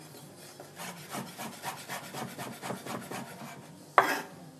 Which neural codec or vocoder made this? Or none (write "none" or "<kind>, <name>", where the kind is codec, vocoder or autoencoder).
none